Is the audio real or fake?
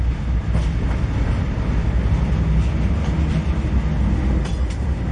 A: real